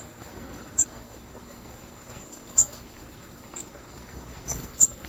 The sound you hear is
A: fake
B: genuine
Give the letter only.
A